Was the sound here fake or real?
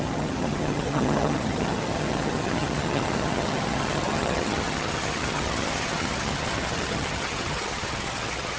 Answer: fake